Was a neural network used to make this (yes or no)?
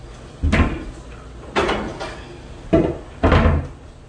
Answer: no